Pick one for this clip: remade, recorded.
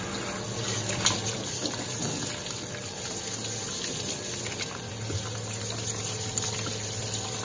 recorded